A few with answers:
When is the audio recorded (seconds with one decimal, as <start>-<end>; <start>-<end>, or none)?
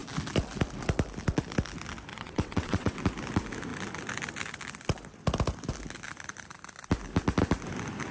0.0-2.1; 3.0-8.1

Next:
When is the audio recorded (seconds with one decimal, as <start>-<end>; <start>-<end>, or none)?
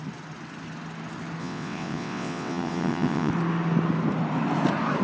0.0-1.4; 3.3-5.0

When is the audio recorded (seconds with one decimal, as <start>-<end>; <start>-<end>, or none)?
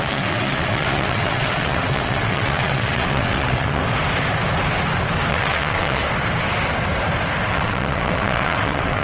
3.8-5.3; 6.0-7.5